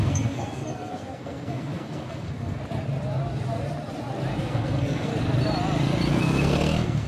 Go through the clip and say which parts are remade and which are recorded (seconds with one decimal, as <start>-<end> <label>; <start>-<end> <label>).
0.0-2.6 remade; 2.6-4.4 recorded; 4.4-5.1 remade; 5.1-6.1 recorded; 6.1-7.1 remade